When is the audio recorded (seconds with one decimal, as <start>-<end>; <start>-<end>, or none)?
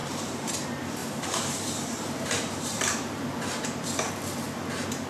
0.5-1.0; 4.1-5.1